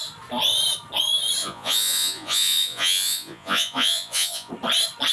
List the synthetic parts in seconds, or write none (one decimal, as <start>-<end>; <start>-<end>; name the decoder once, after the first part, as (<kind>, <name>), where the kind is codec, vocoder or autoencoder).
1.4-4.5 (vocoder, Vocos)